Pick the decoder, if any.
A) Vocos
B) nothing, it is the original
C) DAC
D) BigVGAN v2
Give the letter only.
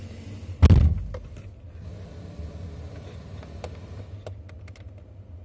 B